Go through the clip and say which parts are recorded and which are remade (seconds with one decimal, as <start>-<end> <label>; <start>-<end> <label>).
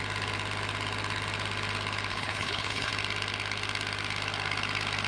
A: 0.0-2.1 recorded; 2.1-2.9 remade; 2.9-5.1 recorded